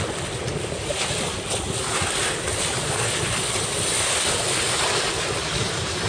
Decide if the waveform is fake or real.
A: real